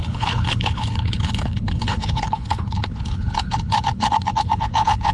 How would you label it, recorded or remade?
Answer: remade